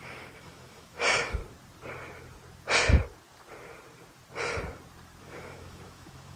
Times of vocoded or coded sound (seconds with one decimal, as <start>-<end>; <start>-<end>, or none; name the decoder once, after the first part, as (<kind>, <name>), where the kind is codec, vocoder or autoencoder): 0.0-1.4 (autoencoder, DAC-VAE); 5.2-6.4